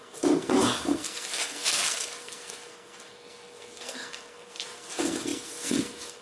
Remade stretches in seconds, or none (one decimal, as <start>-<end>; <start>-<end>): 0.0-6.2